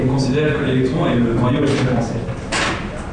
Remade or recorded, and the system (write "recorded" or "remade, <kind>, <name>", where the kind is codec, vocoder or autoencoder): recorded